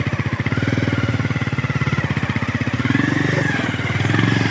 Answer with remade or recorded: recorded